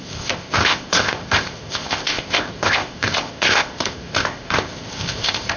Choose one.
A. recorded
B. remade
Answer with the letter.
B